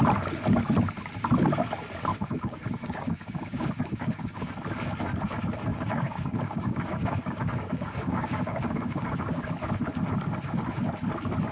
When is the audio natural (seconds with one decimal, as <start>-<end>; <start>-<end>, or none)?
0.0-2.1; 4.5-5.7; 9.5-11.5